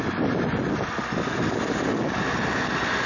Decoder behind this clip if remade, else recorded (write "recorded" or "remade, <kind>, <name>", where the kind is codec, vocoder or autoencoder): recorded